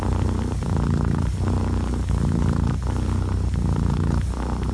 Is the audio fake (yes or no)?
no